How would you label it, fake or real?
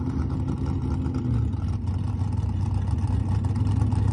real